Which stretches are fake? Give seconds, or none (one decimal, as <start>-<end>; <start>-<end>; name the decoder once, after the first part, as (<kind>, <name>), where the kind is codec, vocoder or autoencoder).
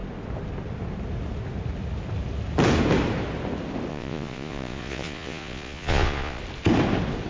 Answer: 3.9-6.4 (vocoder, Vocos)